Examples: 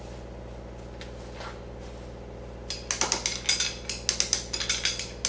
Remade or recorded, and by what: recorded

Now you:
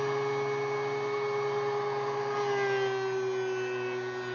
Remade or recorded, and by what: recorded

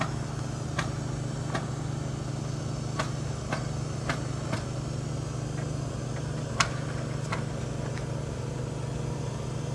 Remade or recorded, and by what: recorded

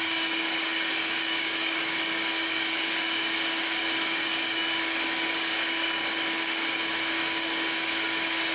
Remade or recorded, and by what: remade, codec, DAC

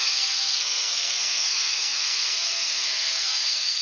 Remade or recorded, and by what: remade, codec, SNAC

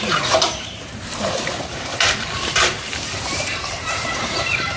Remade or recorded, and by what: remade, vocoder, BigVGAN v2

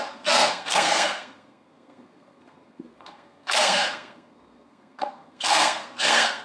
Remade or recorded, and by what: remade, codec, SNAC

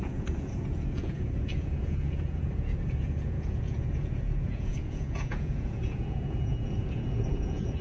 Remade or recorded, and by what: remade, vocoder, Vocos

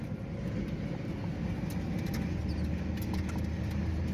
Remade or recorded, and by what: recorded